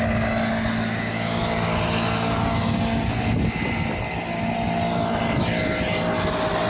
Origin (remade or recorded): recorded